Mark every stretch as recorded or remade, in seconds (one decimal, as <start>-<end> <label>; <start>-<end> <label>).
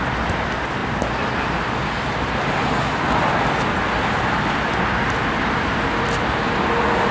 0.0-7.1 recorded